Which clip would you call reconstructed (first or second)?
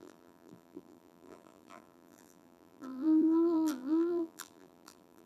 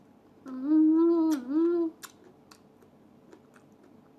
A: first